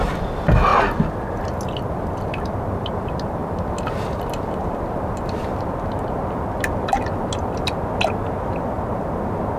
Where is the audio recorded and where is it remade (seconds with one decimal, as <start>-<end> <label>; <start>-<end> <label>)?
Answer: 0.0-9.6 recorded